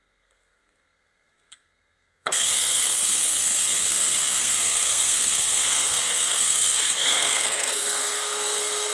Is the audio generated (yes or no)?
yes